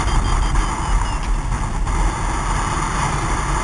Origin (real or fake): real